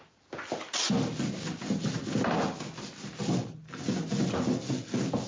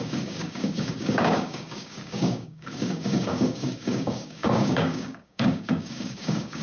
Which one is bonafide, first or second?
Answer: first